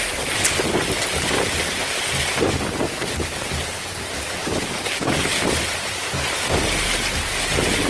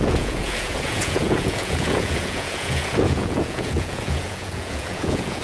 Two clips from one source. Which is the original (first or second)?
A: first